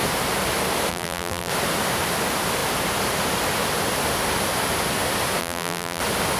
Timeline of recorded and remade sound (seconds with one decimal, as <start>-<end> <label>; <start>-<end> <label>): 0.0-0.9 recorded; 0.9-1.5 remade; 1.5-5.4 recorded; 5.4-6.0 remade; 6.0-6.4 recorded

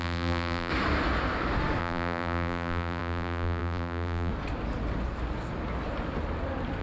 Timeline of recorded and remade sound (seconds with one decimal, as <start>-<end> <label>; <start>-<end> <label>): 0.0-0.7 remade; 0.7-1.8 recorded; 1.8-4.3 remade; 4.3-6.8 recorded

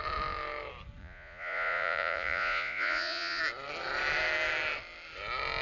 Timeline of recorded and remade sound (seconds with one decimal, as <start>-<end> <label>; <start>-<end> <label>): 0.0-1.0 recorded; 1.0-3.4 remade; 3.4-5.6 recorded

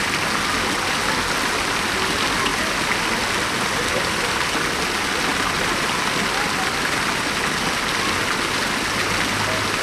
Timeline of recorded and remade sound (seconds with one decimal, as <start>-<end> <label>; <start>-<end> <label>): 0.0-9.8 recorded

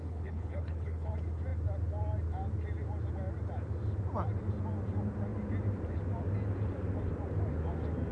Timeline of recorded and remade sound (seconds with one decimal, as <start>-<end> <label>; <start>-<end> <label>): 0.0-1.1 remade; 1.1-8.1 recorded

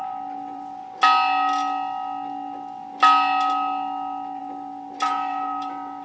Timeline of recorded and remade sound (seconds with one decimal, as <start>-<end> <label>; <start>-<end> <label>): 0.0-0.8 remade; 0.8-4.4 recorded; 4.4-6.0 remade

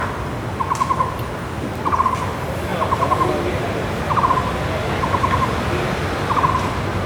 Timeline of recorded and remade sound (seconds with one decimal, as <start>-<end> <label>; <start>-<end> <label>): 0.0-7.1 recorded

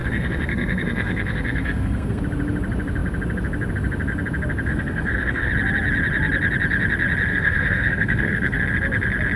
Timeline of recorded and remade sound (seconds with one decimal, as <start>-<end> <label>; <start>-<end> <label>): 0.0-2.2 remade; 2.2-4.7 recorded; 4.7-5.5 remade; 5.5-7.3 recorded; 7.3-8.6 remade; 8.6-9.4 recorded